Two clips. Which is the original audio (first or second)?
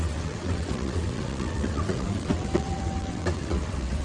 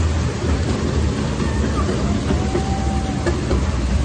second